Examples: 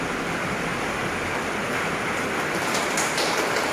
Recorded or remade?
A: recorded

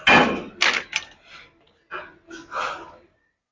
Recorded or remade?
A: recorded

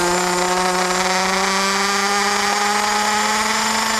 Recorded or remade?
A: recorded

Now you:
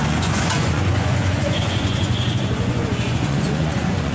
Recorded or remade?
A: remade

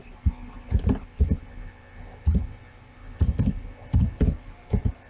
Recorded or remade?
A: recorded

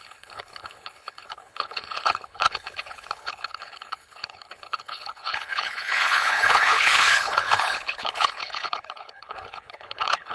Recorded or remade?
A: remade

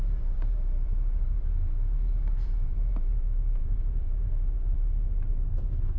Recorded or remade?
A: remade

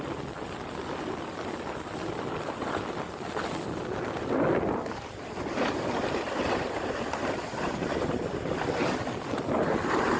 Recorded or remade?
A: recorded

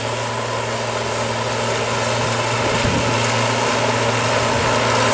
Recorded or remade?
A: recorded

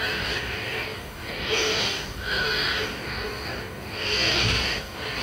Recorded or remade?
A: remade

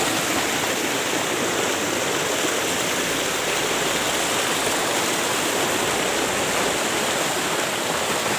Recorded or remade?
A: recorded